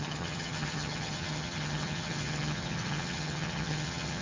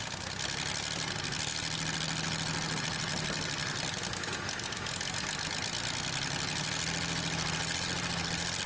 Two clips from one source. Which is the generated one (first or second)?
first